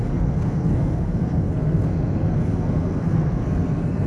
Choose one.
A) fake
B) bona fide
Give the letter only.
A